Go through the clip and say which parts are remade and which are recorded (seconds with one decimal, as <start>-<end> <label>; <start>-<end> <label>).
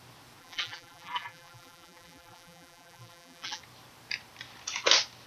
0.0-0.4 recorded; 0.4-3.6 remade; 3.6-5.3 recorded